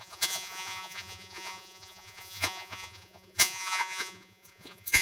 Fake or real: fake